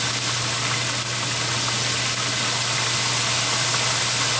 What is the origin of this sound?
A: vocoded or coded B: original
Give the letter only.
B